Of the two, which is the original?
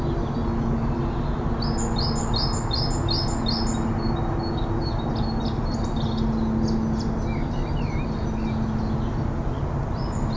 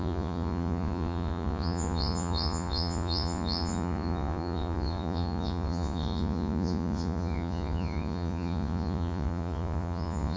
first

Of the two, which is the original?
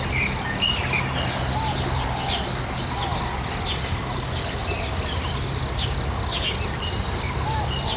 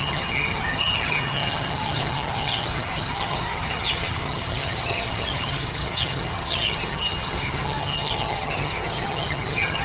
first